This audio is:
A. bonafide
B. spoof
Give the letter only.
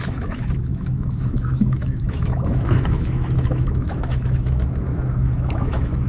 B